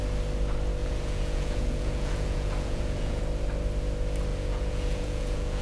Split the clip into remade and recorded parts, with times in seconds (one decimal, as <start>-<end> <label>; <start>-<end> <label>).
0.0-0.8 recorded; 0.8-3.2 remade; 3.2-4.3 recorded; 4.3-5.6 remade